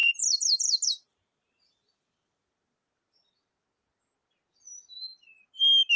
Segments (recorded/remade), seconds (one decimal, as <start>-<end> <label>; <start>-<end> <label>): 0.0-6.0 recorded